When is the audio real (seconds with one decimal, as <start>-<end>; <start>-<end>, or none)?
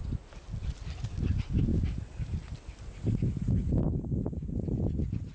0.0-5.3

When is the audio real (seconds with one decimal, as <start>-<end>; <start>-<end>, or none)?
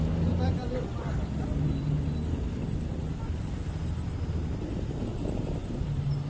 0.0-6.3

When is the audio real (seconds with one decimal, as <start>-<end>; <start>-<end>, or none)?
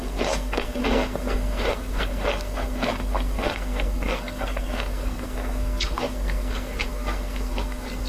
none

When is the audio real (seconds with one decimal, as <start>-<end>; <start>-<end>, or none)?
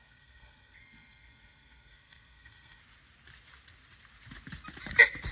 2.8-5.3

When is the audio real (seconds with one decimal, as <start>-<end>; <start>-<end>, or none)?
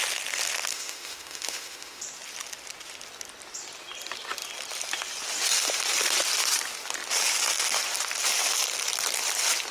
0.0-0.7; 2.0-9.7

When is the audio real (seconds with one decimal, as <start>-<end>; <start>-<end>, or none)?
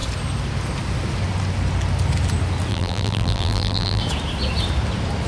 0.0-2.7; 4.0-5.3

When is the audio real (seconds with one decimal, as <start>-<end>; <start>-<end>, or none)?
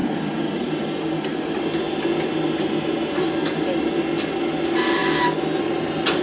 0.0-6.2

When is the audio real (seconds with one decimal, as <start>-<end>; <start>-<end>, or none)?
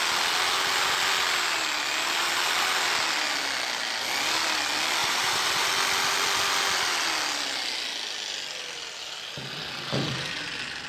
0.0-5.0; 5.7-10.9